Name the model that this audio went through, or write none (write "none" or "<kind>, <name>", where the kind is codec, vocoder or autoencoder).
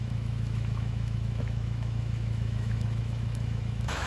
autoencoder, DAC-VAE